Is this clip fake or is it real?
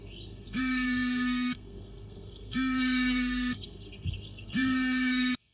fake